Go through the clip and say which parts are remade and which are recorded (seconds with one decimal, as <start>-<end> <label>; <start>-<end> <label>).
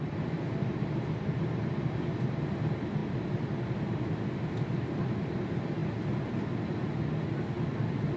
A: 0.0-8.2 recorded